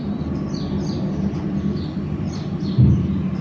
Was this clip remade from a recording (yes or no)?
no